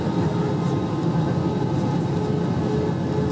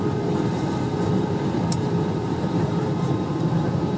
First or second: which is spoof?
second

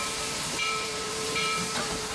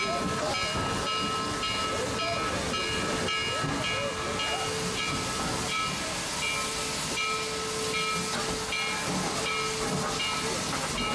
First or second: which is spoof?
first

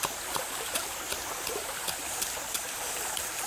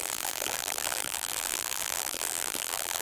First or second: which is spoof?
second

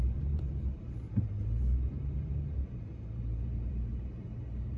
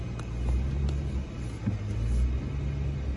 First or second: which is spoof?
first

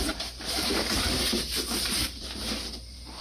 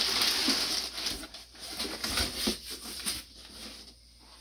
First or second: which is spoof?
first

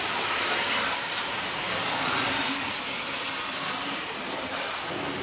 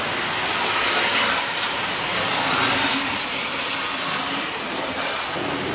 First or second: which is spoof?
first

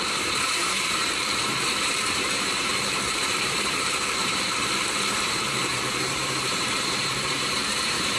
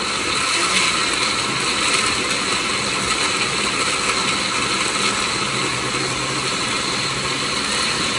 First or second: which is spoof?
first